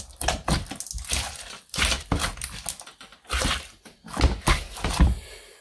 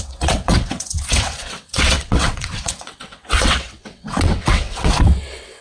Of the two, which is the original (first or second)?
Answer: first